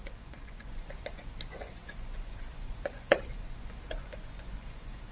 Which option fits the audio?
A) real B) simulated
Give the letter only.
B